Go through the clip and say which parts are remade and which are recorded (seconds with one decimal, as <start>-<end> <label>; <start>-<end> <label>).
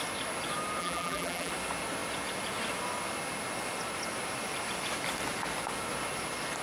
0.0-0.8 recorded; 0.8-1.5 remade; 1.5-6.6 recorded